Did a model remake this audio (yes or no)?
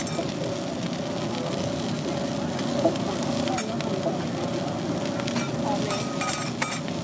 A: no